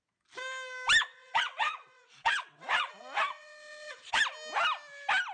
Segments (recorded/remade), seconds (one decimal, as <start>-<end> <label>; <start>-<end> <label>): 0.0-1.0 recorded; 1.0-4.2 remade; 4.2-5.3 recorded